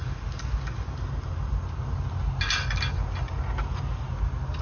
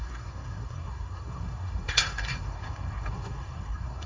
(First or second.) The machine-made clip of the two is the second